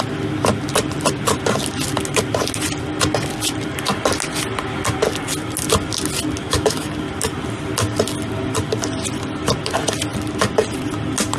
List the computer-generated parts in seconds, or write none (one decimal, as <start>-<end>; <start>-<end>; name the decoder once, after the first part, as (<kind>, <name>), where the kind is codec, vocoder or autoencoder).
6.4-6.9 (autoencoder, DAC-VAE)

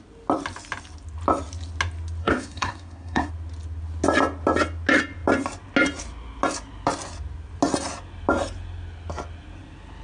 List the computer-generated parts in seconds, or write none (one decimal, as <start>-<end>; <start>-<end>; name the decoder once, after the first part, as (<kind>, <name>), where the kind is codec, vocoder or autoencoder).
2.2-3.3 (codec, SNAC)

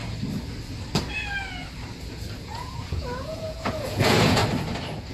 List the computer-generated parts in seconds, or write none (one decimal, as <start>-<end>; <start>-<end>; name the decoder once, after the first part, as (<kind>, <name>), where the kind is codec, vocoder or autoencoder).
2.4-4.4 (vocoder, Vocos)

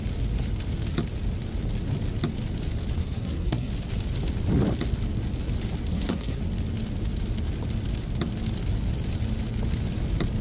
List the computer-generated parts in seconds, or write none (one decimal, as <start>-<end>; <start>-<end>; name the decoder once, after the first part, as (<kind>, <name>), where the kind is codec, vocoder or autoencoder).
3.0-3.7 (codec, SNAC); 5.9-6.4